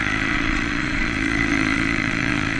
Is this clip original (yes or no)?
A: no